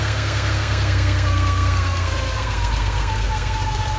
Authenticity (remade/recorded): remade